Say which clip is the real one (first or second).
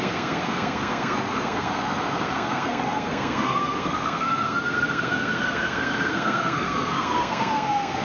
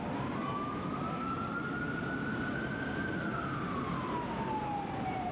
second